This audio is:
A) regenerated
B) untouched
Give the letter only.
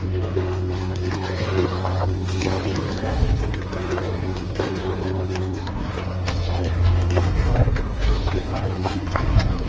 A